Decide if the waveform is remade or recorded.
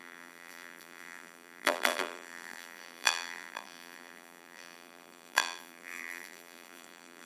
remade